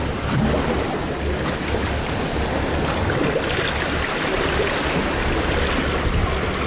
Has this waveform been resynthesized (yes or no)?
no